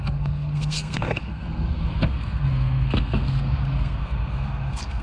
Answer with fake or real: fake